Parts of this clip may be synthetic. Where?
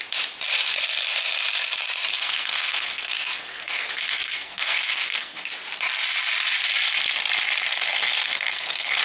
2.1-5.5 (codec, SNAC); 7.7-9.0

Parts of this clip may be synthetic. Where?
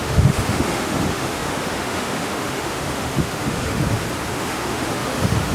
0.0-3.8 (autoencoder, DAC-VAE); 4.4-5.5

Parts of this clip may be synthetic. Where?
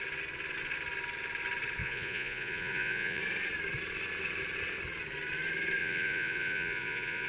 1.8-3.2 (vocoder, Vocos); 5.8-7.3